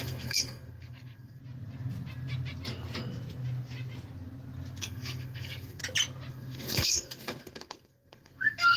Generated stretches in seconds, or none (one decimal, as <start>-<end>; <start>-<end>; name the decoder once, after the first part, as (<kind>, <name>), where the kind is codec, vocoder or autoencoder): 0.0-1.4 (codec, SNAC); 4.8-5.8; 6.3-8.8